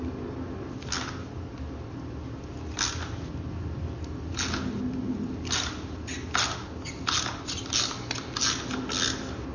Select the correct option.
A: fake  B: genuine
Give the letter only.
B